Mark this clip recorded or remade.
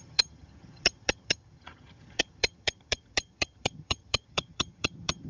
remade